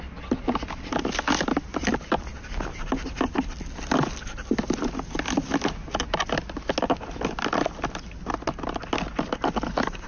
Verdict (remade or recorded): recorded